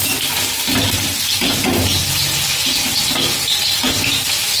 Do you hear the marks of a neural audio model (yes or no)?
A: no